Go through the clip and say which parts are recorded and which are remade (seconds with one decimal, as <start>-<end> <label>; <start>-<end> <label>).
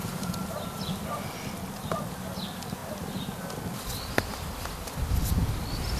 0.0-2.8 recorded; 2.8-6.0 remade